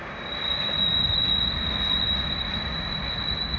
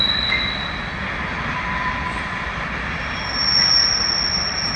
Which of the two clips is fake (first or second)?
first